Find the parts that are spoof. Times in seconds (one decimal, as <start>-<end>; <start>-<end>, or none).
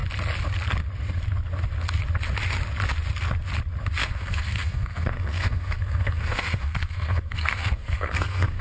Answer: 4.0-8.6